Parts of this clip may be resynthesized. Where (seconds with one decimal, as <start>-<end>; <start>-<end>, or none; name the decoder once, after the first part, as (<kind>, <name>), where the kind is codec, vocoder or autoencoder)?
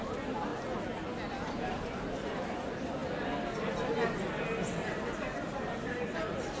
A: none